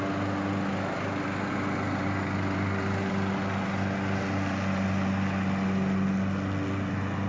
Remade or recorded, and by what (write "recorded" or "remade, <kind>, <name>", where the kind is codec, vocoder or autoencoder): recorded